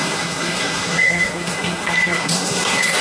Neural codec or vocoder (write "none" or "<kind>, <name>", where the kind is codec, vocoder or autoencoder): codec, SNAC